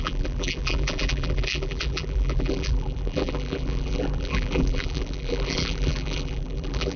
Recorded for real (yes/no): no